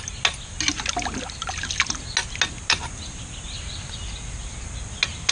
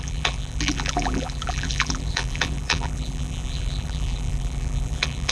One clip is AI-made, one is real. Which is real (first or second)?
first